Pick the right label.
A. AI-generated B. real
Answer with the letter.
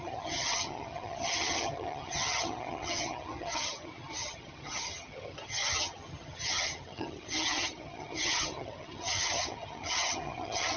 A